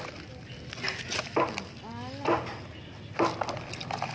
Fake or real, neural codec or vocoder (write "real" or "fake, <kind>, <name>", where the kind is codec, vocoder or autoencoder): real